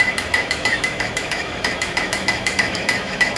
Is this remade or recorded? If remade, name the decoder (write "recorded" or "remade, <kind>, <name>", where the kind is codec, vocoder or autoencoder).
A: remade, autoencoder, DAC-VAE